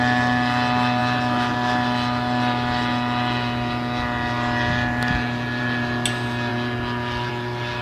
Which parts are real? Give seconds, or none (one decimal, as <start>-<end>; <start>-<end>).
0.0-7.8

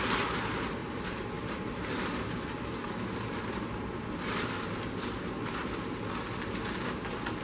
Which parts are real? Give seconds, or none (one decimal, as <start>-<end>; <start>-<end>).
0.0-0.8; 2.0-7.4

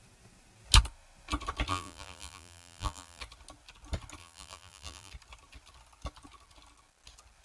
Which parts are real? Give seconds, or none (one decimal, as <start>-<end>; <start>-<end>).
0.0-1.7; 3.2-4.2; 5.1-7.4

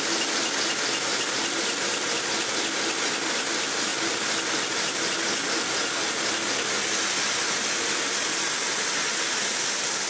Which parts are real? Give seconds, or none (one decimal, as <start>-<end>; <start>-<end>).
0.0-1.1; 2.1-10.1

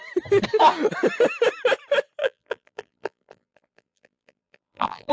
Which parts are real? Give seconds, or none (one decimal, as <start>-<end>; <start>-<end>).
0.0-2.2

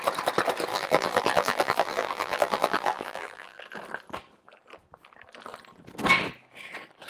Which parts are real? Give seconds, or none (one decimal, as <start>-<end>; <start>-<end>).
0.0-0.7; 3.6-7.1

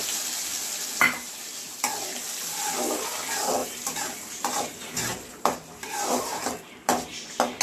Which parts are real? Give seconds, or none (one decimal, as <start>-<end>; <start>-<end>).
0.0-3.6; 6.4-7.6